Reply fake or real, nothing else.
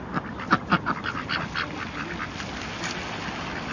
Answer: real